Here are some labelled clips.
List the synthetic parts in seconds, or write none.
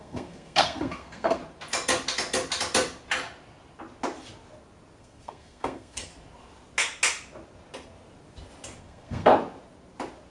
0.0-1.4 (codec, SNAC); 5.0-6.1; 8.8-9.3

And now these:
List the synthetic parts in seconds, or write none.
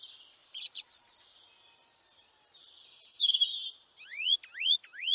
0.4-1.1 (vocoder, Vocos)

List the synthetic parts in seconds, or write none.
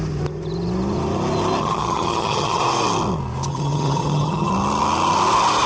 1.6-2.6 (vocoder, HiFi-GAN); 3.5-4.5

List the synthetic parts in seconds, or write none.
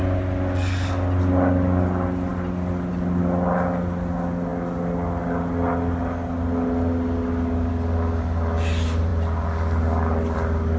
none